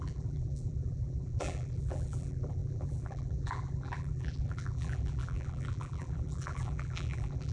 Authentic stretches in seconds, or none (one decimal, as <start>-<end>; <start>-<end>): none

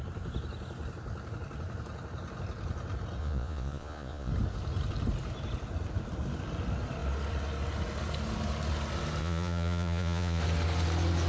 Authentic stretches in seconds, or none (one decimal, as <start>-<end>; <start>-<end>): 0.0-3.2; 4.3-9.2; 10.4-11.3

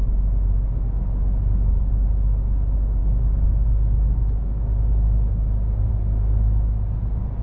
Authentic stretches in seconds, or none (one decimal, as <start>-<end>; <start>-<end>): 0.0-7.4